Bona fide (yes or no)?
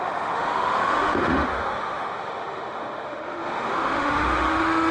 no